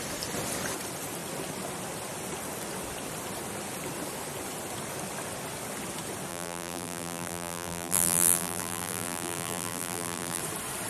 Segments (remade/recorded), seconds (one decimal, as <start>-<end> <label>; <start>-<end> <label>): 0.0-6.3 recorded; 6.3-10.4 remade; 10.4-10.9 recorded